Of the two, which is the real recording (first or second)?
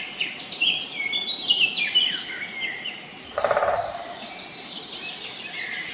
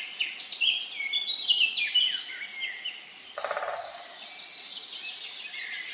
second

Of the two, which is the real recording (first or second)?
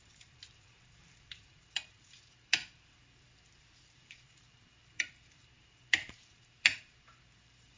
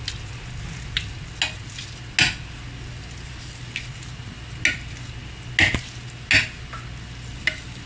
second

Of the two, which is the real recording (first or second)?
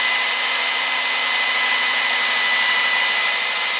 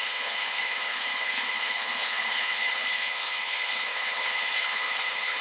first